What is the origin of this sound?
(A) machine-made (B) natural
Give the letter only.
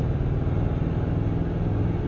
B